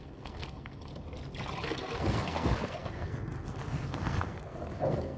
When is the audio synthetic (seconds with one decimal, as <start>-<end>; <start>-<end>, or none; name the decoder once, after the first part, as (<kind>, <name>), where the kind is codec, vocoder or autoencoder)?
0.0-0.9 (codec, SNAC); 1.6-5.2